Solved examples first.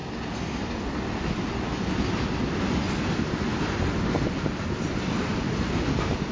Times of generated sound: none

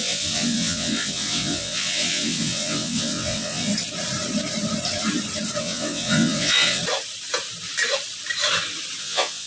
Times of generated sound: 0.0-3.7 (vocoder, WaveNeXt); 5.6-6.8; 9.0-9.5

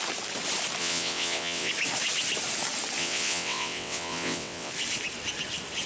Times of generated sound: 0.8-1.7 (vocoder, WaveNeXt); 3.0-4.7

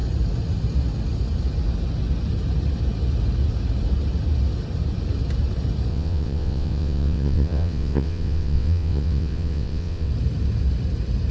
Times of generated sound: 5.9-10.1 (vocoder, WaveNeXt)